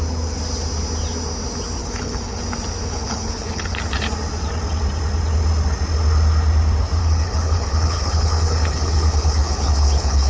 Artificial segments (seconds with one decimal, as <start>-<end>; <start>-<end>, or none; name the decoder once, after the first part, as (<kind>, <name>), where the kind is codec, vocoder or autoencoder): 1.8-2.4 (codec, HILCodec); 2.8-3.8; 7.0-10.3